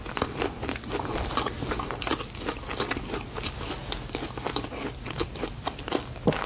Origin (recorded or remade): recorded